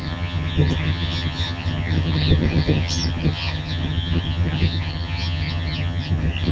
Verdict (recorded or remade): remade